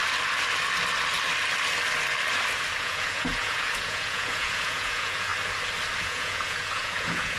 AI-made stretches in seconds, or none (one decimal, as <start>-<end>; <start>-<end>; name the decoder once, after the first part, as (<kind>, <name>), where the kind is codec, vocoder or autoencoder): 2.8-5.3 (vocoder, Vocos); 6.0-7.4